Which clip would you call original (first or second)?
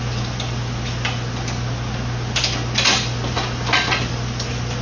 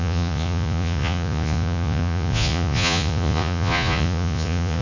first